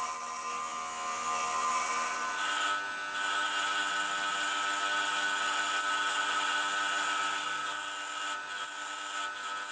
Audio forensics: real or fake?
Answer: real